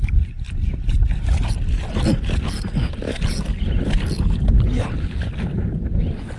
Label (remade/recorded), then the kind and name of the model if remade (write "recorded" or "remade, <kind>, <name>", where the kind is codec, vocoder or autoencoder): recorded